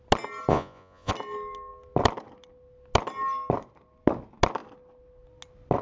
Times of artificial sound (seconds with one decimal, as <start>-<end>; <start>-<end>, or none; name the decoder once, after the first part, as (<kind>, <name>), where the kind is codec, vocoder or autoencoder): 0.5-1.1 (vocoder, Vocos)